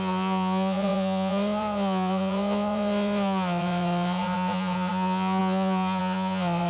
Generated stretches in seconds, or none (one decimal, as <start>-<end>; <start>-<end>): 0.0-6.7